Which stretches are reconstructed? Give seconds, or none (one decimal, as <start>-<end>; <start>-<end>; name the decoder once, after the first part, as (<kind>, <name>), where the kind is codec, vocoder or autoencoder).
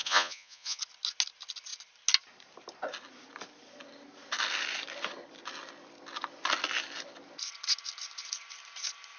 0.0-0.8 (vocoder, Vocos)